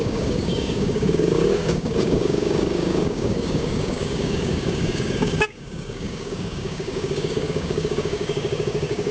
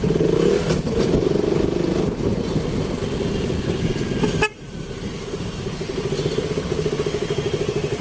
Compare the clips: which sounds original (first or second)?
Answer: second